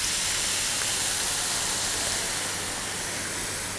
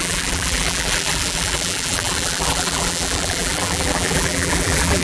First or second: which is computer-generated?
second